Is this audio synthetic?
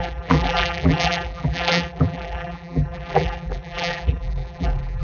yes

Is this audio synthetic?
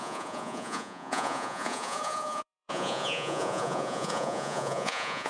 yes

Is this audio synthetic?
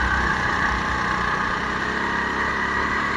no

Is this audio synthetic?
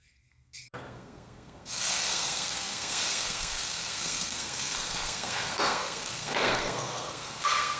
yes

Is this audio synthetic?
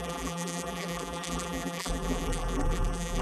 yes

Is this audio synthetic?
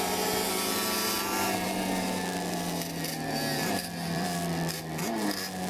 yes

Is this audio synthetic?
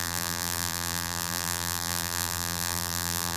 yes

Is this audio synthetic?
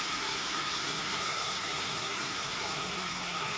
yes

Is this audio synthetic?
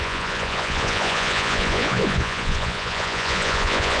yes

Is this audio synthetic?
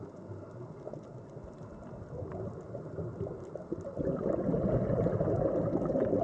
no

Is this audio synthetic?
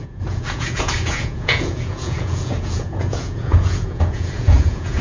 yes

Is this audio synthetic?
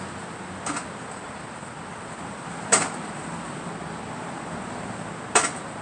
no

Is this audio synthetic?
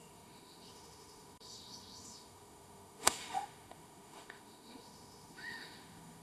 yes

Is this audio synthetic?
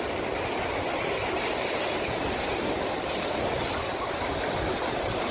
no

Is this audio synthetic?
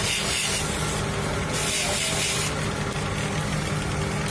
no